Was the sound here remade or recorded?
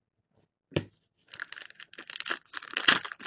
recorded